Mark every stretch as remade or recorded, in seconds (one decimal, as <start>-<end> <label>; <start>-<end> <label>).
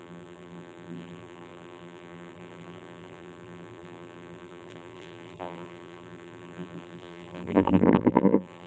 0.0-8.7 remade